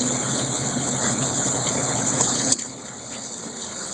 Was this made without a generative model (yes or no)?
no